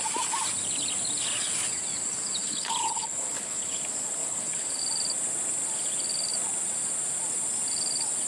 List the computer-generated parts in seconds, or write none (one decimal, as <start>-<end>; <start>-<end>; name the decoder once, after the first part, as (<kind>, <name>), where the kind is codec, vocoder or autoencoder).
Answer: 2.4-3.8 (codec, HILCodec); 4.2-4.8